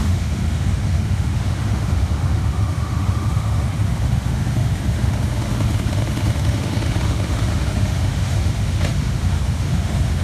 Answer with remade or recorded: remade